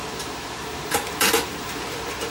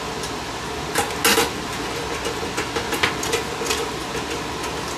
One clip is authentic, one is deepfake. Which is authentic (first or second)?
second